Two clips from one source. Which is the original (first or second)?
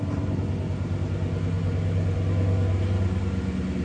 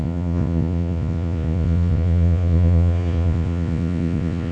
first